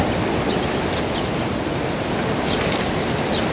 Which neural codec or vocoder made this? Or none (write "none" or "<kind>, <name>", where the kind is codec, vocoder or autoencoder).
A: none